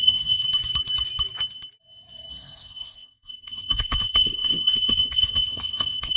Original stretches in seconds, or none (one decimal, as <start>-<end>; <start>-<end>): 0.4-2.3